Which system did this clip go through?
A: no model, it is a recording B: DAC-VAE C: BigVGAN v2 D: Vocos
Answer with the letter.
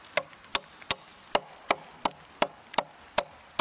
A